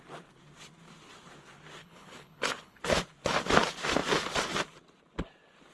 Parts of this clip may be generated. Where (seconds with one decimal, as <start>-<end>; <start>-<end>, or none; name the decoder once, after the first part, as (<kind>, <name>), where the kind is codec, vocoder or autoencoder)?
1.8-2.8 (codec, HILCodec)